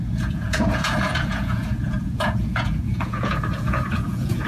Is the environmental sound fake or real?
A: fake